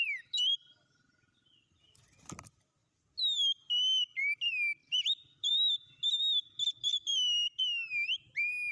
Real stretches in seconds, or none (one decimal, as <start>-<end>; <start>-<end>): 0.0-0.5; 1.8-4.8; 5.5-6.9; 7.6-8.7